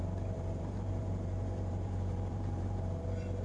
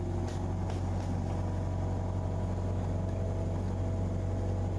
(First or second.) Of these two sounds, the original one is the second